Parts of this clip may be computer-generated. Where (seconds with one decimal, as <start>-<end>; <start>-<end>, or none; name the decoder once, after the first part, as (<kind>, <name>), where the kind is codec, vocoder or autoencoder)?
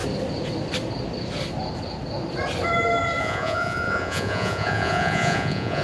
3.2-5.8 (vocoder, Vocos)